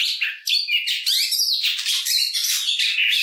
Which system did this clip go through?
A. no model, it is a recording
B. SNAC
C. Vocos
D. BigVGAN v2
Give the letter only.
D